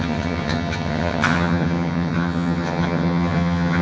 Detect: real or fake fake